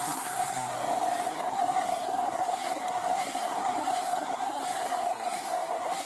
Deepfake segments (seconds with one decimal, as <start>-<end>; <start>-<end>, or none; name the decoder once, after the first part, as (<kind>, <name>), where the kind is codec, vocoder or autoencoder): 0.0-0.7 (codec, SNAC); 1.3-6.1